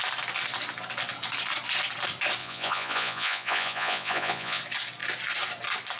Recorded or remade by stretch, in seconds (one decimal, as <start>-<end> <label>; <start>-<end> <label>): 0.0-2.4 recorded; 2.4-4.6 remade; 4.6-6.0 recorded